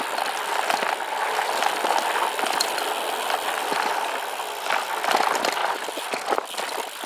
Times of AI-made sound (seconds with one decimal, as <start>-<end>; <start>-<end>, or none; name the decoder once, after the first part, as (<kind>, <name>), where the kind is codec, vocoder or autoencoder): none

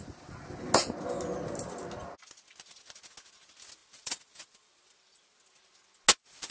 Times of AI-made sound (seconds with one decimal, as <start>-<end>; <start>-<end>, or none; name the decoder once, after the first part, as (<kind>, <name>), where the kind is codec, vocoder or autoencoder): 3.8-5.2 (vocoder, BigVGAN v2)

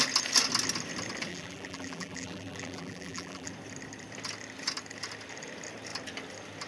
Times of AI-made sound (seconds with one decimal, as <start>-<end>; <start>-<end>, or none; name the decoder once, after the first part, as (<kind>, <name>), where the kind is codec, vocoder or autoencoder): 1.3-3.5 (vocoder, BigVGAN v2)

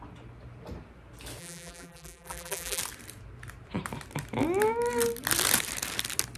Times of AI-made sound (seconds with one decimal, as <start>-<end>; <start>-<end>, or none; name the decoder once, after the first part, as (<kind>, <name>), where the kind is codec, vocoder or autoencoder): 1.4-2.8 (vocoder, BigVGAN v2)

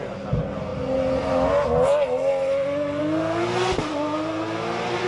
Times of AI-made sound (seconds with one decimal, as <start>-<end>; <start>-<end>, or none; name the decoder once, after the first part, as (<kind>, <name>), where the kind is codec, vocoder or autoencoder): none

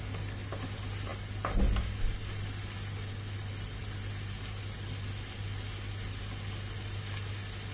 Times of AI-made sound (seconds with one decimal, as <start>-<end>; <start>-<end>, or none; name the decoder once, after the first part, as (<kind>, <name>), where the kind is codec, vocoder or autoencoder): none